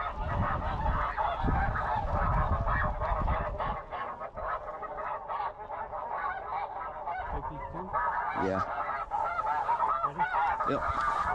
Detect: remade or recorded recorded